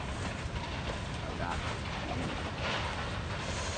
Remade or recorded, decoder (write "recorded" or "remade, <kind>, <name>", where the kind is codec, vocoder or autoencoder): recorded